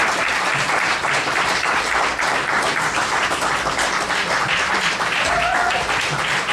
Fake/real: fake